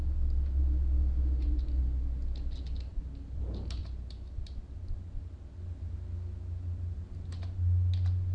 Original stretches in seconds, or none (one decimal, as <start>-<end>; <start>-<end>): 0.0-2.9; 3.4-3.8; 5.6-8.3